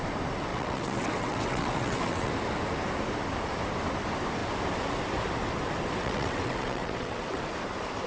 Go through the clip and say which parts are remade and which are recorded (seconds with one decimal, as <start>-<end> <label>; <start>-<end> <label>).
0.0-0.5 recorded; 0.5-2.3 remade; 2.3-6.0 recorded; 6.0-7.4 remade; 7.4-8.1 recorded